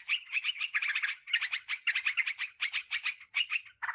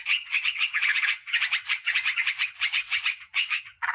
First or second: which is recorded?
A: first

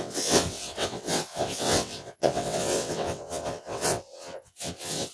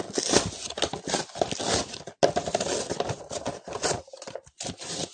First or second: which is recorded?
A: second